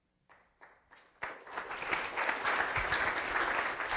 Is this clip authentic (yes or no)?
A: yes